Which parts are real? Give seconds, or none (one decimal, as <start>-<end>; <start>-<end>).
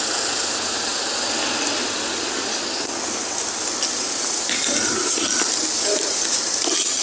0.0-7.0